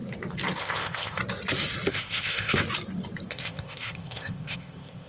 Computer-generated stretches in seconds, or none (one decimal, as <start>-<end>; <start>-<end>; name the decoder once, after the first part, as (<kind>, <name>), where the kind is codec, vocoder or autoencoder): 0.6-1.2 (codec, ZipCodec); 1.9-2.6; 3.3-5.1